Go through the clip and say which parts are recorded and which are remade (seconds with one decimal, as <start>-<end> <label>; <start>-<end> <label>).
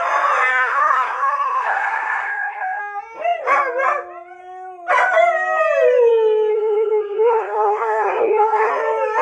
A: 0.0-0.5 recorded; 0.5-2.8 remade; 2.8-6.5 recorded; 6.5-8.7 remade; 8.7-9.2 recorded